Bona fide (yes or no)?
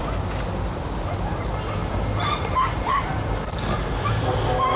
yes